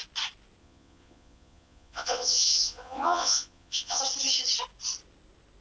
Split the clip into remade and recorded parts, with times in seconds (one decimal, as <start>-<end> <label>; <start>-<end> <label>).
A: 0.0-0.6 recorded; 0.6-4.0 remade; 4.0-5.6 recorded